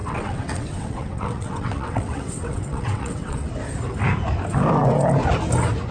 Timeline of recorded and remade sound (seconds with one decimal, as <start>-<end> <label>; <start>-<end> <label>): 0.0-3.5 remade; 3.5-5.9 recorded